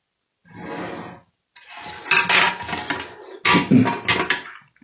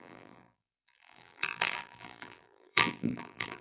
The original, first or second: first